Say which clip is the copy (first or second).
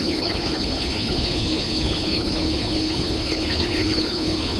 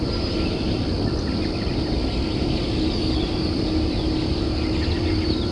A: first